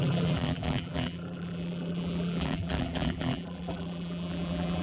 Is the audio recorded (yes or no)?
no